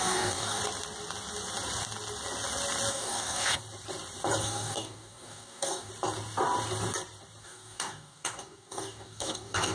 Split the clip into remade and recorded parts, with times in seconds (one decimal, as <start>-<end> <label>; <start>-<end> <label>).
0.0-0.6 remade; 0.6-2.9 recorded; 2.9-3.6 remade; 3.6-4.4 recorded; 4.4-5.9 remade; 5.9-7.4 recorded; 7.4-9.7 remade